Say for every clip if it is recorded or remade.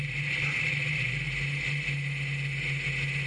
recorded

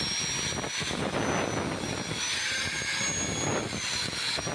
recorded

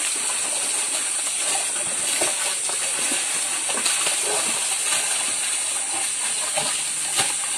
recorded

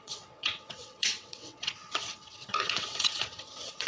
remade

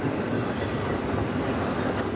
recorded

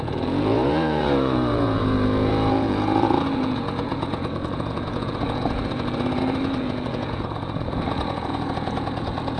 remade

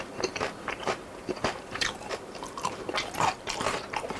remade